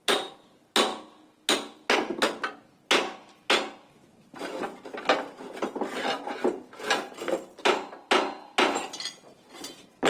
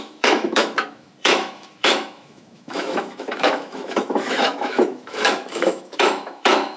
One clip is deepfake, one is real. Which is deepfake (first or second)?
second